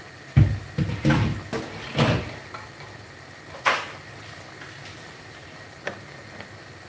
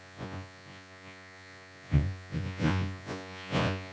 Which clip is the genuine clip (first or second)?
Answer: first